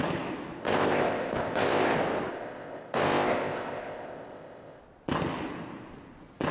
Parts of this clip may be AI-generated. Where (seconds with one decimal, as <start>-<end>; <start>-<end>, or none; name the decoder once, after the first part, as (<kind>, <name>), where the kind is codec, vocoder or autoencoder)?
0.6-1.9 (codec, ZipCodec); 2.3-4.8